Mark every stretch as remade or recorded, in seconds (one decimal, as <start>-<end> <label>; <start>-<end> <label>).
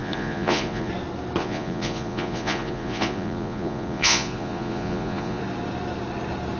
0.0-0.9 remade; 0.9-1.4 recorded; 1.4-5.4 remade; 5.4-6.6 recorded